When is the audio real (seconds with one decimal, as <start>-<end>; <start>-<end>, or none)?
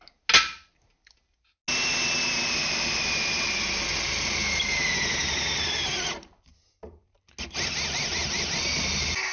0.0-9.3